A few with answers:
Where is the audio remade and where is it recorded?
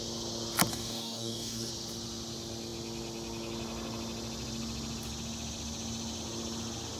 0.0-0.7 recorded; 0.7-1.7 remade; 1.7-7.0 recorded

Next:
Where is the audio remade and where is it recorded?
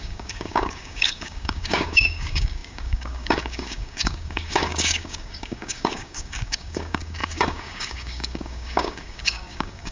0.0-9.9 remade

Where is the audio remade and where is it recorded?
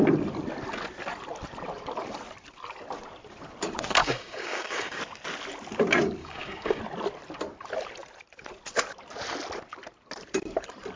0.0-4.0 recorded; 4.0-5.0 remade; 5.0-6.2 recorded; 6.2-6.8 remade; 6.8-11.0 recorded